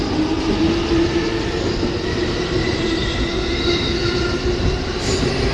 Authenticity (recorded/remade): recorded